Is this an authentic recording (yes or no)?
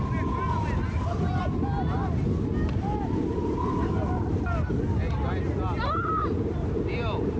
yes